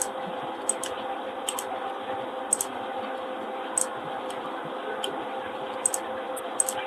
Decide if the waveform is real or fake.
real